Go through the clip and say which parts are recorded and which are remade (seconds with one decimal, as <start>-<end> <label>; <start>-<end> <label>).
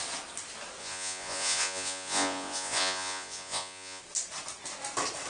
0.0-0.8 recorded; 0.8-4.0 remade; 4.0-5.3 recorded